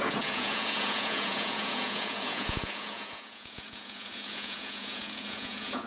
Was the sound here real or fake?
fake